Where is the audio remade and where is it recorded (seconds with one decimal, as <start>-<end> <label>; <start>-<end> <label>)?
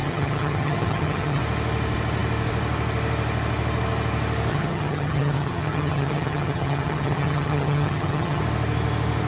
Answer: 0.0-1.4 remade; 1.4-4.5 recorded; 4.5-8.4 remade; 8.4-9.3 recorded